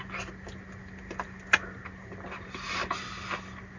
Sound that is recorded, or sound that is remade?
recorded